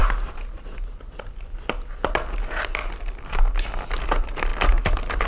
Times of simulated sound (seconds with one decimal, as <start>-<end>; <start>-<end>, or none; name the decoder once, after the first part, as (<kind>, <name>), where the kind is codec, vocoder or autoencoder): none